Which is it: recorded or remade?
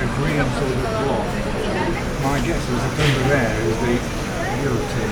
recorded